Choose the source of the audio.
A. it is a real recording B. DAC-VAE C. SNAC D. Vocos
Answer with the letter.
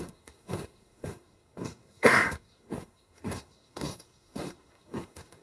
C